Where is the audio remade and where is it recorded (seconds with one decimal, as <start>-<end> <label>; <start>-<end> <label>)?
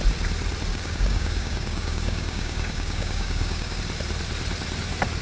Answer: 0.0-0.7 recorded; 0.7-3.8 remade; 3.8-5.2 recorded